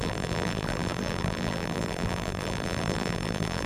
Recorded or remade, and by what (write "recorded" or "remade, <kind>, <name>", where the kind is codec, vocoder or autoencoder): remade, vocoder, BigVGAN v2